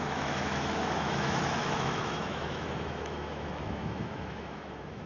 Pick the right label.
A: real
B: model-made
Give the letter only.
B